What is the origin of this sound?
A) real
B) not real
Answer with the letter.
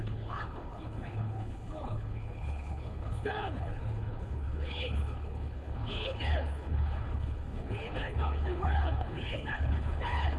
B